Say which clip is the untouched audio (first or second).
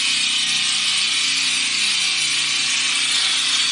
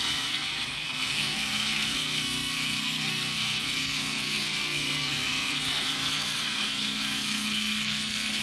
first